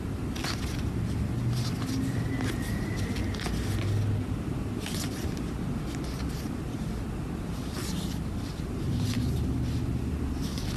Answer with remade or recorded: recorded